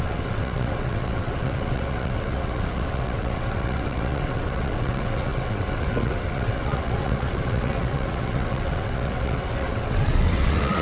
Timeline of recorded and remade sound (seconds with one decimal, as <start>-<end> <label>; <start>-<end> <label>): 0.0-10.8 remade